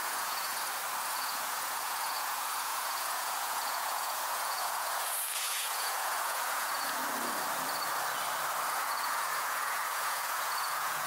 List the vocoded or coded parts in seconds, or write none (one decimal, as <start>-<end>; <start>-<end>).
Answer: 0.0-0.5; 1.1-7.0; 8.7-11.1

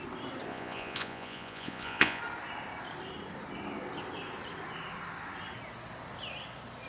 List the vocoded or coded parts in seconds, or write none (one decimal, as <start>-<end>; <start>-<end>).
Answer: 0.5-2.2

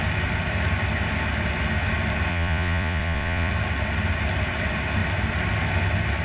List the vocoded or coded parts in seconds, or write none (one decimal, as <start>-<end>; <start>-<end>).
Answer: 2.3-3.5

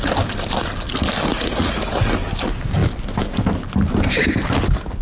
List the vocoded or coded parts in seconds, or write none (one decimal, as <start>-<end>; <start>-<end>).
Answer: 1.3-1.9

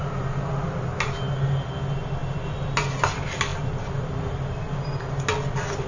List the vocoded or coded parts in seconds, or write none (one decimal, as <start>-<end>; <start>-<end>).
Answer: none

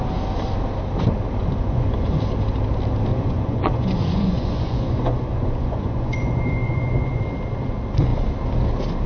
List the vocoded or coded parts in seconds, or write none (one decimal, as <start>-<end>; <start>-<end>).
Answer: 1.4-2.2; 3.1-7.2

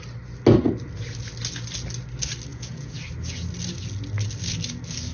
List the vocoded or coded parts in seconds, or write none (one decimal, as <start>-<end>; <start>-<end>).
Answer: 2.5-3.0